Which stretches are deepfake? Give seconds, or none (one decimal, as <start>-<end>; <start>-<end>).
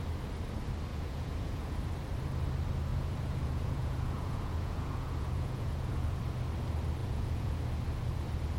0.9-1.8; 2.9-6.2; 7.0-7.6